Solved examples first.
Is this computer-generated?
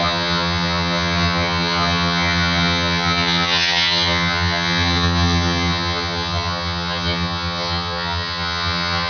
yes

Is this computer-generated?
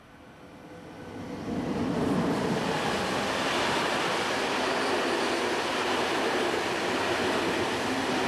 no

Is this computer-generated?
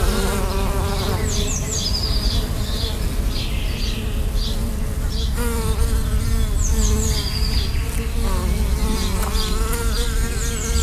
no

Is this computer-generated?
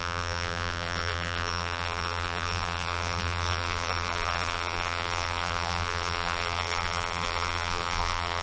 yes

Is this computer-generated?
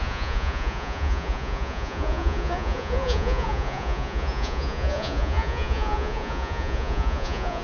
yes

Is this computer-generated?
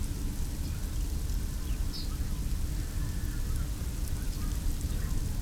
no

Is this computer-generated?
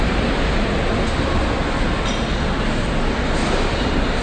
no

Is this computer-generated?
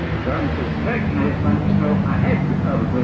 no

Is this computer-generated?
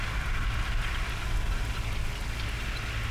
no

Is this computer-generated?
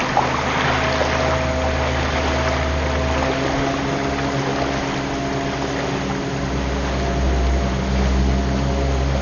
no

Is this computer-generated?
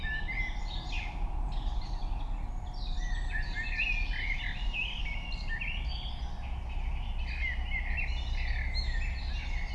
no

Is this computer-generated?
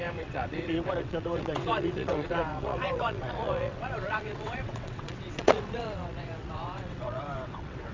yes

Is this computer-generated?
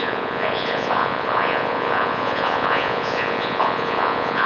yes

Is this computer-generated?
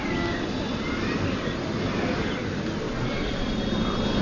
no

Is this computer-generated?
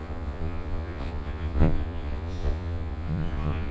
yes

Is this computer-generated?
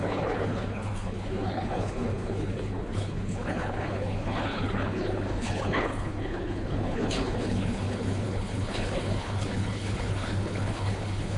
yes